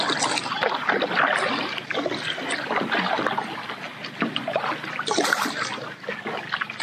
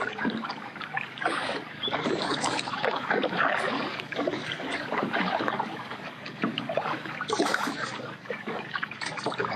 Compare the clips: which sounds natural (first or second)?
first